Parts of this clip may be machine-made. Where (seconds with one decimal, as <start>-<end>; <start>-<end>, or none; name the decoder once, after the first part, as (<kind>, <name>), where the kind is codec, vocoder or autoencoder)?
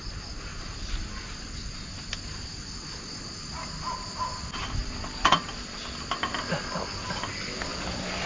none